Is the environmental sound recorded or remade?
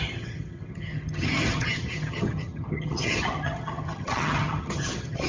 remade